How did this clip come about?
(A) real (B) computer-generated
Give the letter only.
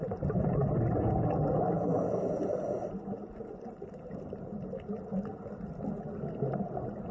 A